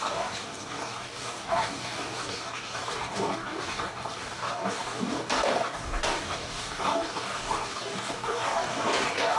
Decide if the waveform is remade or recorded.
remade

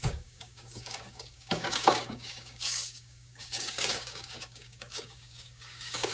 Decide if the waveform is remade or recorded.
remade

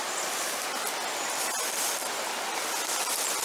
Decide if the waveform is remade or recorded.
recorded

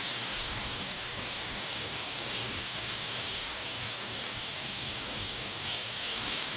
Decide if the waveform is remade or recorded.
remade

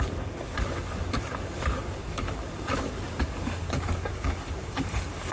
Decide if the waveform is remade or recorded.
remade